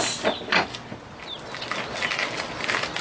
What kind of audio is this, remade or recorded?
recorded